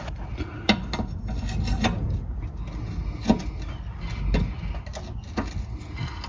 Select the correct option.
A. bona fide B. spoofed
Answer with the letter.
A